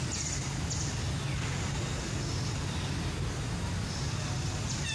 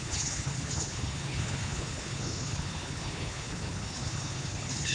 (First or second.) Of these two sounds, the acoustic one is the first